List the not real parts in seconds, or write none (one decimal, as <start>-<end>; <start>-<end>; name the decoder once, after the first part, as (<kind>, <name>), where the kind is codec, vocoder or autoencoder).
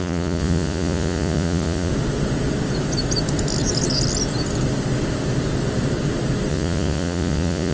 0.0-1.9 (vocoder, Vocos); 6.5-7.7